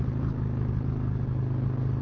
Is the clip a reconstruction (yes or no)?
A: no